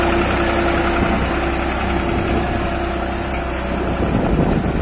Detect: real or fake real